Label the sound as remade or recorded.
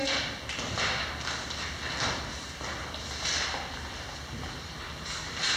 recorded